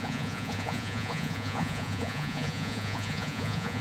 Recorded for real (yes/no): no